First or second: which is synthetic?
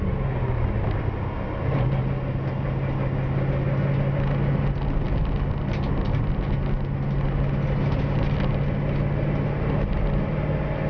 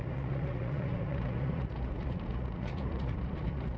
second